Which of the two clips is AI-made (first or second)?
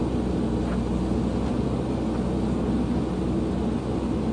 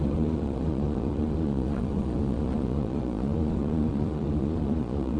second